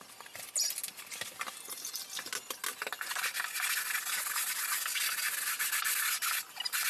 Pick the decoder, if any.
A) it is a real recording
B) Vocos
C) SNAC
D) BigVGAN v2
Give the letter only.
A